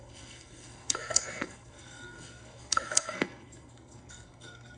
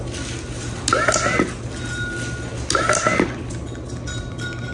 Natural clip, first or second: second